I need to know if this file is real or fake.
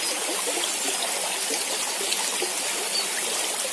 real